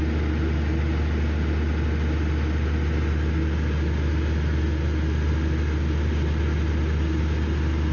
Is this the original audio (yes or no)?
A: yes